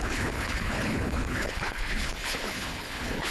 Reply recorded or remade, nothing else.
remade